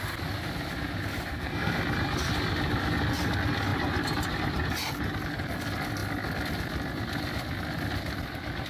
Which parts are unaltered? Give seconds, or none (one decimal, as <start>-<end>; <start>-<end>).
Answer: 0.0-1.3; 1.8-8.7